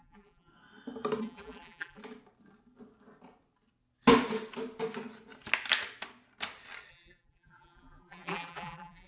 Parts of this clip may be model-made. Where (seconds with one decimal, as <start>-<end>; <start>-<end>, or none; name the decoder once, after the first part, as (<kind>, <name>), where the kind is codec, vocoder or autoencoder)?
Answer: 0.0-0.5 (vocoder, BigVGAN v2); 1.2-2.0; 6.9-9.1